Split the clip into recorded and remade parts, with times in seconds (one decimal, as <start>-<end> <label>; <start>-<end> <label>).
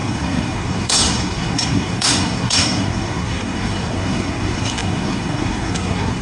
0.0-6.2 remade